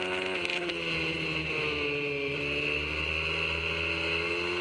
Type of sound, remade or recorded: recorded